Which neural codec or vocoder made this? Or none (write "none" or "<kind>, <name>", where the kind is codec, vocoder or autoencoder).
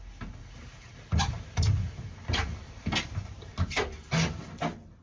none